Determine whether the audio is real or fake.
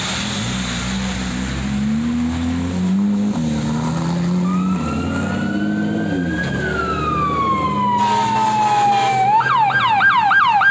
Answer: real